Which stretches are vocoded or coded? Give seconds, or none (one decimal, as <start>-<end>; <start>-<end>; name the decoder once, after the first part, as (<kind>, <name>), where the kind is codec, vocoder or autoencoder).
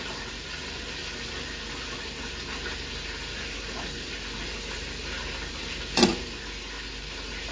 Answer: none